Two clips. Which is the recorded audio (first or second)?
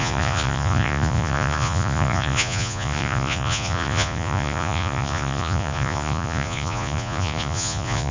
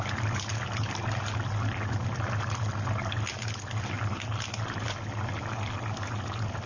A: second